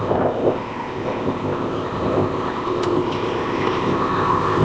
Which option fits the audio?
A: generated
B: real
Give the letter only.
A